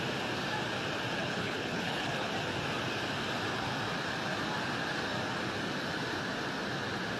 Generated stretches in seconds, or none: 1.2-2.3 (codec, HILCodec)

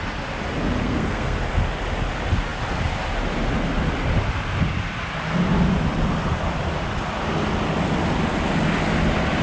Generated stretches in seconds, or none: 0.8-1.4 (codec, SNAC)

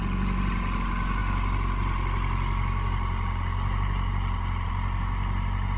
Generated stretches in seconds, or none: none